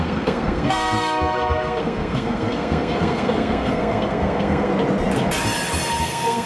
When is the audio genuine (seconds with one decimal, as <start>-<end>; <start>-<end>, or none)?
4.7-6.0